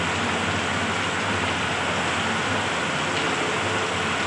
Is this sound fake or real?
real